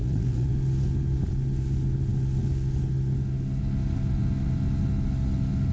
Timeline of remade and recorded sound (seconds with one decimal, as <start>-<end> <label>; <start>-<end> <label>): 0.0-0.5 remade; 0.5-5.7 recorded